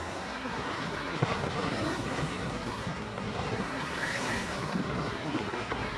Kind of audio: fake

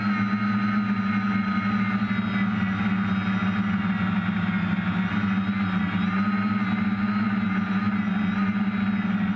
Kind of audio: real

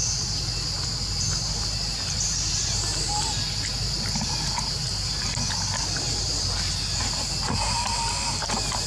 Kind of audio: real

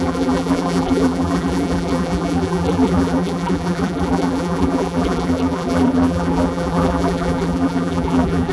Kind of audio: fake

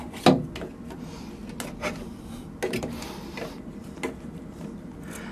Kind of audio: real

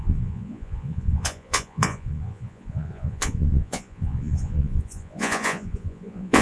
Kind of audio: fake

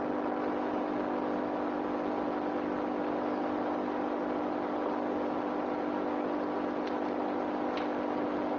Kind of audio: real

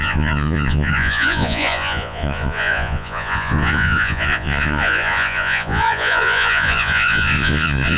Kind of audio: fake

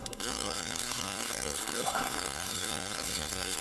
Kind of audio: fake